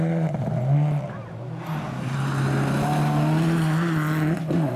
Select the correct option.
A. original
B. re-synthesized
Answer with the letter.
A